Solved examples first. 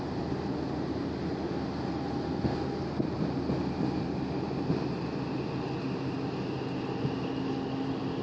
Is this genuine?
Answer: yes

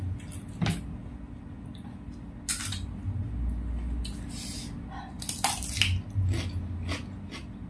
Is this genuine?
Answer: yes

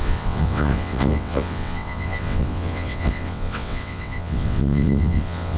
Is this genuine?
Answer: no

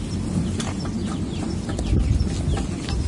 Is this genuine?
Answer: yes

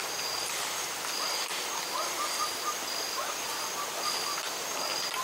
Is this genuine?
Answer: yes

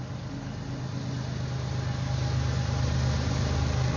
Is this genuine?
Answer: yes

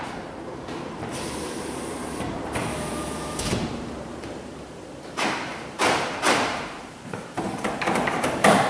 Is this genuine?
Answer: no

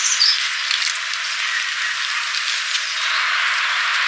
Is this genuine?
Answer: yes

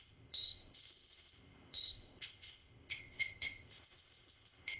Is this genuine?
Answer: no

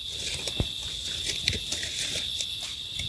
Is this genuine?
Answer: yes